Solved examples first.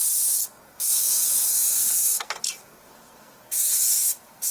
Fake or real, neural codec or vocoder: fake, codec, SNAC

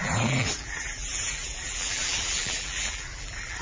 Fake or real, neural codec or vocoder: fake, vocoder, BigVGAN v2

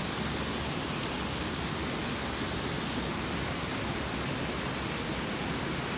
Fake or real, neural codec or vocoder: real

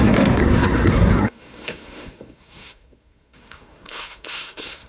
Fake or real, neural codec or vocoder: fake, codec, SNAC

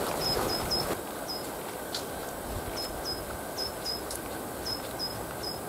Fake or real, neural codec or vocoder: real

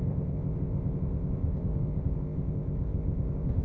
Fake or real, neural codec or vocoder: fake, codec, ZipCodec